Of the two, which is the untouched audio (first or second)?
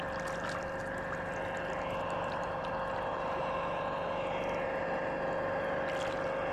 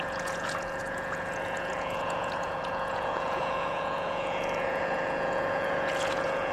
first